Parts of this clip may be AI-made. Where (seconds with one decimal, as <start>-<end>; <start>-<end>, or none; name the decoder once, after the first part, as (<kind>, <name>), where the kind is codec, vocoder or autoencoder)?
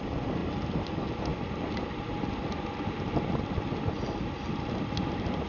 none